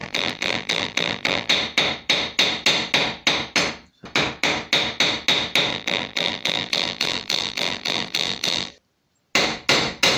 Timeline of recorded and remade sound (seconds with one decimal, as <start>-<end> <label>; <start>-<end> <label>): 0.0-1.5 remade; 1.5-5.7 recorded; 5.7-8.7 remade; 8.7-10.2 recorded